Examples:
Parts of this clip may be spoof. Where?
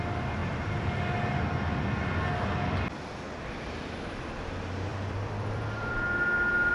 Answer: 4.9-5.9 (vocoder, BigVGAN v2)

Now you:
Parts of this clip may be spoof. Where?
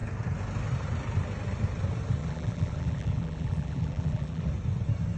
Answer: 2.2-4.5 (vocoder, BigVGAN v2)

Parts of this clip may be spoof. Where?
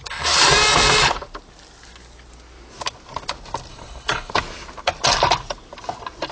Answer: 3.7-4.3 (codec, HILCodec)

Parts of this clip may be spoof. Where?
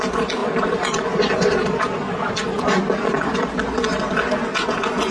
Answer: 0.4-3.5 (vocoder, BigVGAN v2)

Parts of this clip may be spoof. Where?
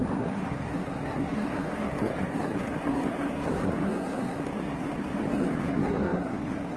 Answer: 0.0-6.8 (codec, SNAC)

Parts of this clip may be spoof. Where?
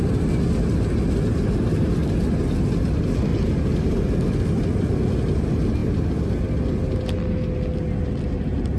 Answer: none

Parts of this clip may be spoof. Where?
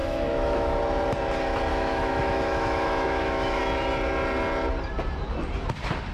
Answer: 0.0-0.8 (autoencoder, DAC-VAE); 1.7-3.6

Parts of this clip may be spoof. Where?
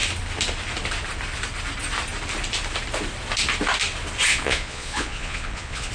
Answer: 4.3-5.9 (vocoder, Vocos)